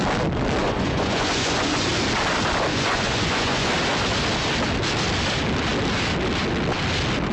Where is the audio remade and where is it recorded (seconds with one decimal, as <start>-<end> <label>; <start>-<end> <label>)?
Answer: 0.0-0.6 recorded; 0.6-1.9 remade; 1.9-2.7 recorded; 2.7-3.7 remade; 3.7-7.3 recorded